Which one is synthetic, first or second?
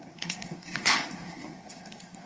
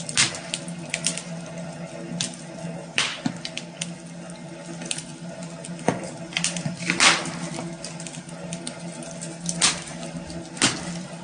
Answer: first